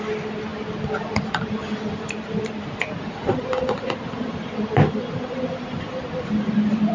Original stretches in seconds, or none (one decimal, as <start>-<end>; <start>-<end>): 0.0-6.9